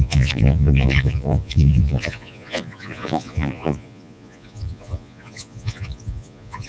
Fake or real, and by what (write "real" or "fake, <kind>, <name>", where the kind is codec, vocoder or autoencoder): fake, vocoder, Vocos